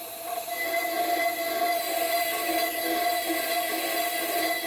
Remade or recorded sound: recorded